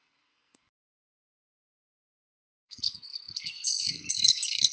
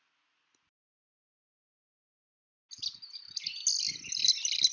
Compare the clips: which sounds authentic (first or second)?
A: second